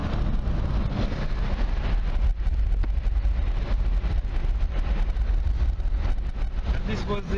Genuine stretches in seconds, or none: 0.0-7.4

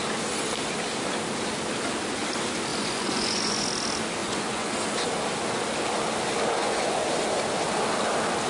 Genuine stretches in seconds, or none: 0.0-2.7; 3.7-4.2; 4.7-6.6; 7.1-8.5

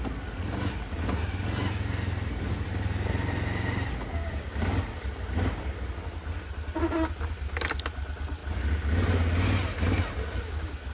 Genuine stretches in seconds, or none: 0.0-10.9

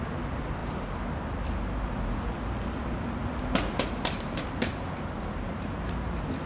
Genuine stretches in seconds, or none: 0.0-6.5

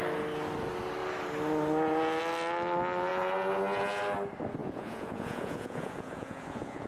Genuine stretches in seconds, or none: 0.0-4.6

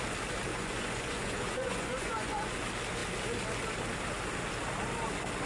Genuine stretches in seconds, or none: 0.0-0.5; 2.5-5.5

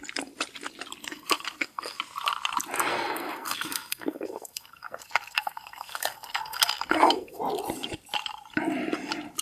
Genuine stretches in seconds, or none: 0.0-1.0; 2.0-2.9; 7.4-9.4

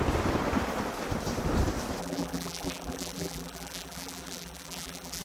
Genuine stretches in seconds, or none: 0.0-2.0